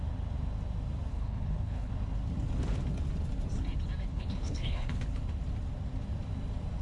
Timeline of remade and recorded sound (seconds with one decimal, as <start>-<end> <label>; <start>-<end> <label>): 0.0-1.1 recorded; 1.1-1.9 remade; 1.9-4.1 recorded; 4.1-5.0 remade; 5.0-6.8 recorded